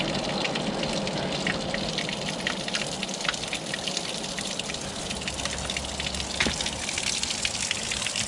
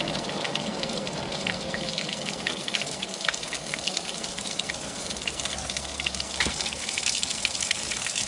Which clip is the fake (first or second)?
second